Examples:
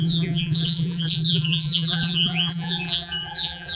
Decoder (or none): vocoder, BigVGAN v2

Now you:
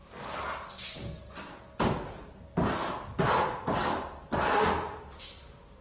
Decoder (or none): none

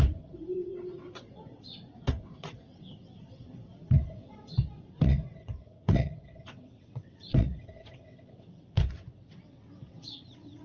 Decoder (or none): vocoder, WaveNeXt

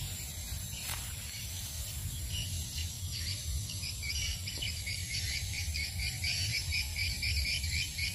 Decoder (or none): vocoder, BigVGAN v2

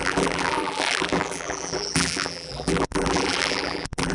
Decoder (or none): vocoder, BigVGAN v2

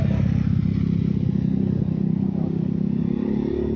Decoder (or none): none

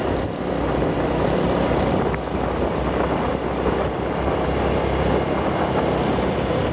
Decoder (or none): none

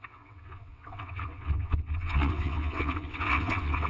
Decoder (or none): vocoder, WaveNeXt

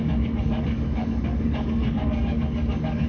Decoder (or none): codec, DAC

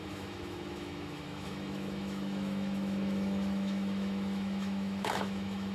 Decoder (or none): autoencoder, DAC-VAE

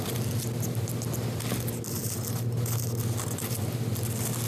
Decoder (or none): none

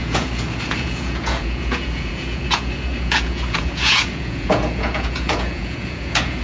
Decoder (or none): vocoder, Vocos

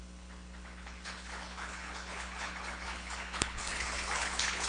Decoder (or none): codec, HILCodec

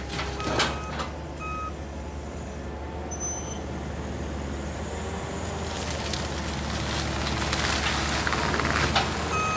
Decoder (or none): none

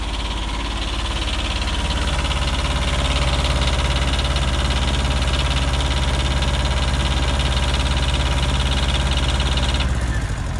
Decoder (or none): none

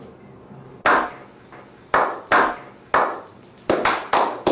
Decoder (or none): none